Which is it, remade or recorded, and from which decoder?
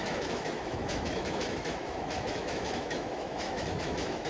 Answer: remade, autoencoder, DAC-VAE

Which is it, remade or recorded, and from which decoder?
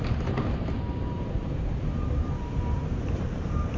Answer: remade, vocoder, BigVGAN v2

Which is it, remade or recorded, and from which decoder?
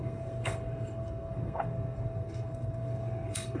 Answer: remade, codec, SNAC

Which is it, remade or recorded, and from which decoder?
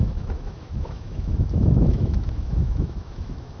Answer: remade, autoencoder, DAC-VAE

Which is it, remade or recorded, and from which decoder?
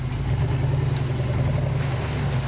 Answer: recorded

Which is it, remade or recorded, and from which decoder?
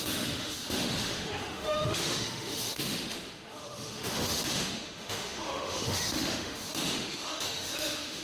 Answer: remade, autoencoder, DAC-VAE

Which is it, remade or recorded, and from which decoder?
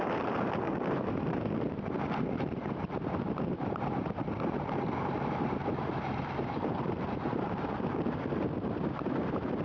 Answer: remade, vocoder, BigVGAN v2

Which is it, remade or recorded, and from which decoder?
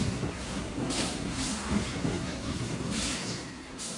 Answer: remade, codec, SNAC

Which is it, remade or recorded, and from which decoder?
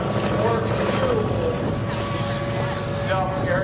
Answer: recorded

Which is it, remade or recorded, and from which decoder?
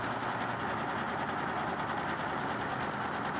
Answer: recorded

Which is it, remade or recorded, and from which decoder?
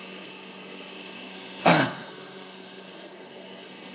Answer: remade, codec, SNAC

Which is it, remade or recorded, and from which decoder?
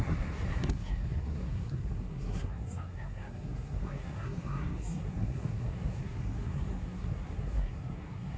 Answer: remade, codec, SNAC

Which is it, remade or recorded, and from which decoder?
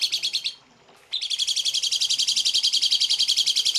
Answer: recorded